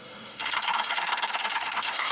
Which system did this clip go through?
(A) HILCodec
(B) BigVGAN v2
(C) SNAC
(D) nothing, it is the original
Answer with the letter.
C